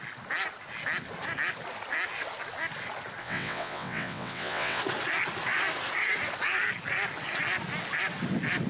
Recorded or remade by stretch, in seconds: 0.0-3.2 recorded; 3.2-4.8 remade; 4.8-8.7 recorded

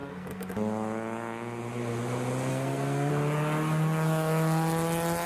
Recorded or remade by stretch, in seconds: 0.0-0.5 remade; 0.5-2.5 recorded; 2.5-3.1 remade; 3.1-5.3 recorded

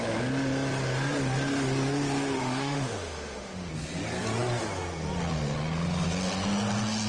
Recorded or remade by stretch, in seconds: 0.0-2.4 recorded; 2.4-3.7 remade; 3.7-7.1 recorded

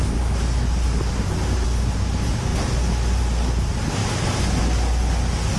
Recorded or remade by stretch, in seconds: 0.0-5.6 recorded

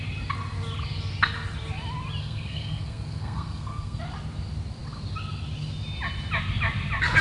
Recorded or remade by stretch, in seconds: 0.0-2.2 recorded; 2.2-4.0 remade; 4.0-7.2 recorded

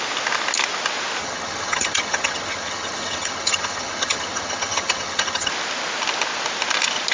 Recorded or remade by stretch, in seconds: 0.0-1.2 recorded; 1.2-5.5 remade; 5.5-7.1 recorded

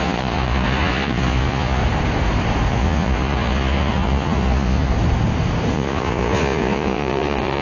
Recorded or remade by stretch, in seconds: 0.0-1.8 remade; 1.8-2.7 recorded; 2.7-4.9 remade; 4.9-5.7 recorded; 5.7-7.6 remade

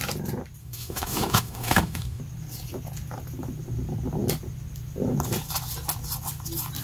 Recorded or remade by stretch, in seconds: 0.0-0.6 recorded; 0.6-2.2 remade; 2.2-6.8 recorded